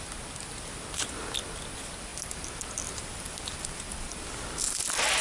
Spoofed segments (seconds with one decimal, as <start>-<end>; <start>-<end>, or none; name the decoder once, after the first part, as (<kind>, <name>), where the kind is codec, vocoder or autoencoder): none